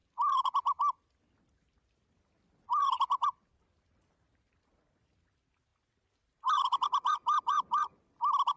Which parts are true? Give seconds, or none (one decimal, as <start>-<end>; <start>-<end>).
0.0-8.6